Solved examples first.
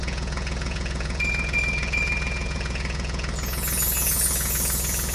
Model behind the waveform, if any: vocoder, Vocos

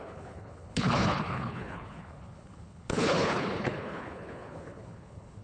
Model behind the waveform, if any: codec, HILCodec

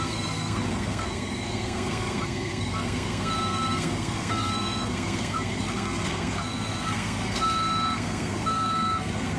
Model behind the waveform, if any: codec, SNAC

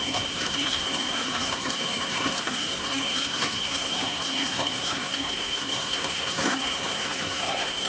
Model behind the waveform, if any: codec, SNAC